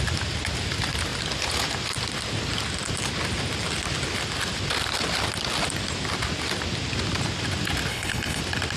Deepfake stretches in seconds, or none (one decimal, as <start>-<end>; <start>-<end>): 7.9-8.4